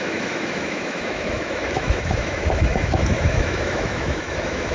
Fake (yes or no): yes